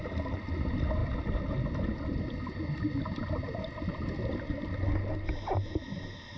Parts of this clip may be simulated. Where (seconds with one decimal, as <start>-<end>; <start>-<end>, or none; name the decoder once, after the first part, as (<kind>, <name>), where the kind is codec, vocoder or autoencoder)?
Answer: none